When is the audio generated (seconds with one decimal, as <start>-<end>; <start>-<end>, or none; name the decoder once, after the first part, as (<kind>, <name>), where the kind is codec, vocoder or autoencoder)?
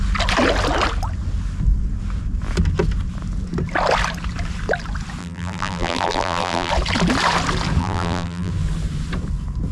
5.2-6.7 (vocoder, BigVGAN v2); 7.8-8.5